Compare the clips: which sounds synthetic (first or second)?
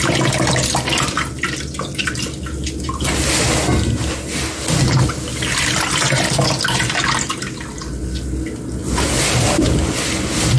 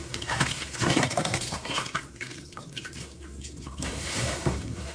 second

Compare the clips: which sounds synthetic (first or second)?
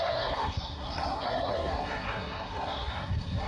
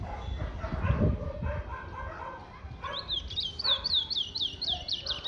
first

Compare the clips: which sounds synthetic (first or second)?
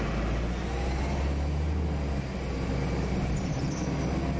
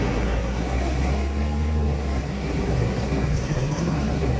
second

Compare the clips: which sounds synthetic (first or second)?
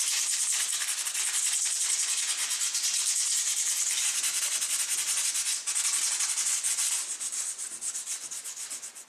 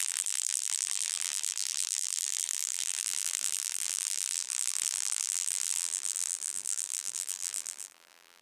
second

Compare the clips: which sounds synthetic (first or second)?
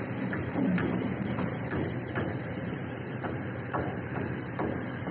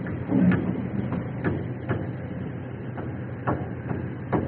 first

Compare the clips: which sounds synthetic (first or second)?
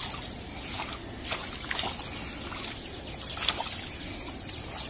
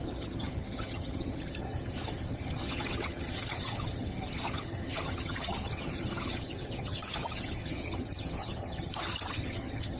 second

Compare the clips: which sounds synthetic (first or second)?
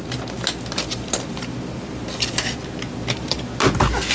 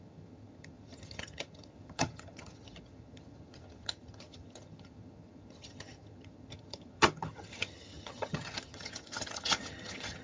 second